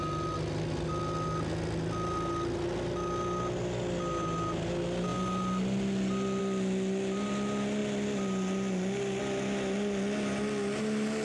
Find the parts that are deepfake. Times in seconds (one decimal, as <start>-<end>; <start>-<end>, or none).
none